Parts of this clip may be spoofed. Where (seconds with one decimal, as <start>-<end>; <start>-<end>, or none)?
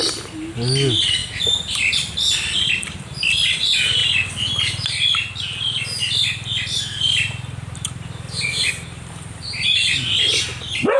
none